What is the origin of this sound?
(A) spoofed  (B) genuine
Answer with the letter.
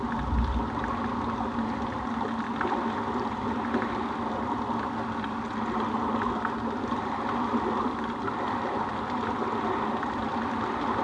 B